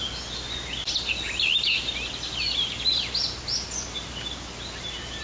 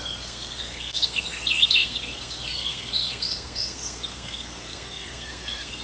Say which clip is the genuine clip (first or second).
first